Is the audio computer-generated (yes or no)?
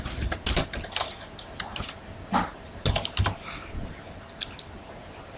no